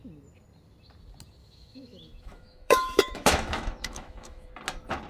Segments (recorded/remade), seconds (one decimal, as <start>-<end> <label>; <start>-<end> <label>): 0.0-1.4 recorded; 1.4-4.5 remade; 4.5-5.1 recorded